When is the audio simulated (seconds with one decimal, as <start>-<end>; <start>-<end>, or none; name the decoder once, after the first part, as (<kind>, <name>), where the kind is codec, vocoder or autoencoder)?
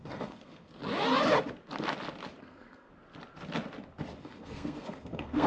0.0-0.8 (codec, SNAC); 2.4-2.9; 4.2-5.5